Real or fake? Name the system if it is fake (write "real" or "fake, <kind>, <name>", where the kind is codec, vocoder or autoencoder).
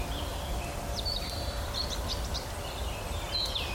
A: fake, vocoder, BigVGAN v2